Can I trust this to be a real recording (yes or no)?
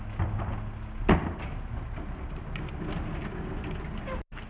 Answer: yes